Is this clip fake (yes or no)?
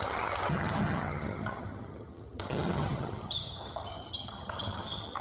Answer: yes